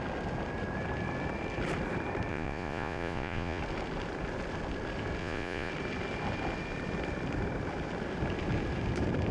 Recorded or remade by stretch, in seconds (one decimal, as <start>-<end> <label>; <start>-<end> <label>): 0.0-2.3 recorded; 2.3-3.6 remade; 3.6-5.2 recorded; 5.2-5.7 remade; 5.7-9.3 recorded